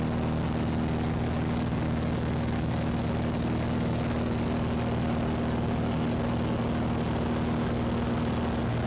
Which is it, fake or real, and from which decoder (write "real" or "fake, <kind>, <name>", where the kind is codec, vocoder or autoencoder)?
real